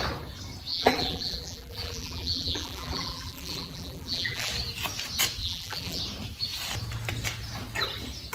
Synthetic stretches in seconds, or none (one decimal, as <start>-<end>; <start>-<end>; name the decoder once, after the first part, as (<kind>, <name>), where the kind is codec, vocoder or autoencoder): 0.7-4.5 (vocoder, BigVGAN v2); 5.4-6.0